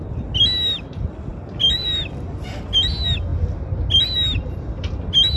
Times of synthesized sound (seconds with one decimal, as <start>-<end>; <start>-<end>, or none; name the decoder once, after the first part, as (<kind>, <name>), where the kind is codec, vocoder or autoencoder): none